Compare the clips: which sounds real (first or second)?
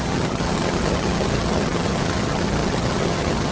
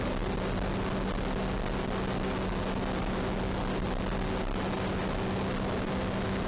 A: second